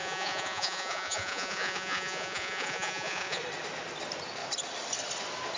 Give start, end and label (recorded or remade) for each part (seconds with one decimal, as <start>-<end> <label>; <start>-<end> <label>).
0.0-3.4 remade; 3.4-5.6 recorded